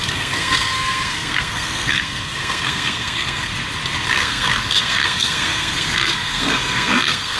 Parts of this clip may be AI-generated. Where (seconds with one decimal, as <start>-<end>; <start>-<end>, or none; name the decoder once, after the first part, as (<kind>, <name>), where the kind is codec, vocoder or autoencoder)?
0.0-3.5 (codec, SNAC); 4.1-7.4